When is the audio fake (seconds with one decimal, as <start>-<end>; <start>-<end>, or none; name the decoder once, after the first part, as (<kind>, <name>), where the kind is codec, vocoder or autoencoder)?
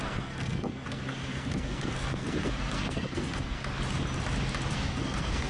0.0-3.6 (codec, SNAC); 4.7-5.5